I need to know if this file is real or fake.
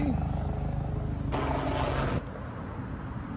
real